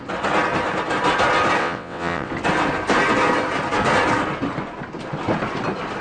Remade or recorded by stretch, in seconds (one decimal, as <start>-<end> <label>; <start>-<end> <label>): 0.0-1.6 recorded; 1.6-2.3 remade; 2.3-6.0 recorded